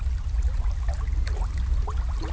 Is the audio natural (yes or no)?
yes